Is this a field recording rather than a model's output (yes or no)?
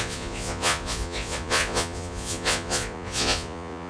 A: no